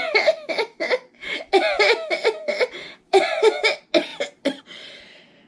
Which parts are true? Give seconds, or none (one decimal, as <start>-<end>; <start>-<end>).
0.0-2.2; 3.4-4.1; 4.6-5.5